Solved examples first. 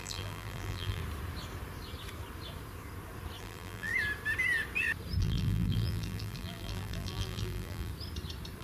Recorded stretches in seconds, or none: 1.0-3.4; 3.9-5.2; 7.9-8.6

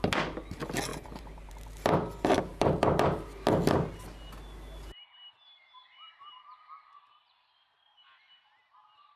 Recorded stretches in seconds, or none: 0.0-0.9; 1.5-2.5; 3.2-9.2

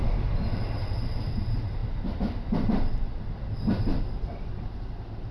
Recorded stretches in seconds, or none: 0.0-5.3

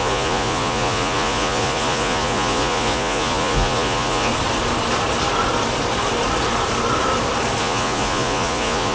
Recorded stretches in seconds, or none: 4.3-7.6

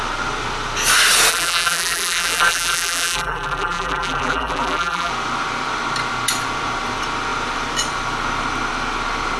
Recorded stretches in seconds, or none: 0.0-1.3; 5.1-9.4